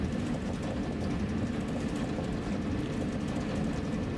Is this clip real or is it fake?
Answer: real